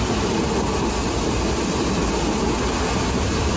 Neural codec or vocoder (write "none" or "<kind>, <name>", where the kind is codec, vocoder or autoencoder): none